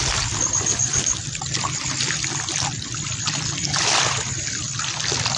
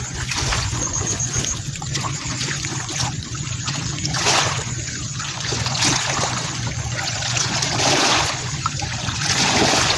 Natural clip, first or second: first